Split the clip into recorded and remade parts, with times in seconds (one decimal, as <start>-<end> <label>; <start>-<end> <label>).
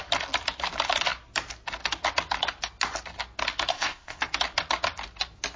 0.0-3.7 recorded; 3.7-4.2 remade; 4.2-5.6 recorded